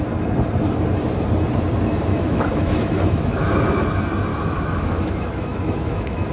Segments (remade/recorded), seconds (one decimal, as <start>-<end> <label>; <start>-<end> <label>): 0.0-2.1 recorded; 2.1-3.5 remade; 3.5-4.3 recorded; 4.3-6.3 remade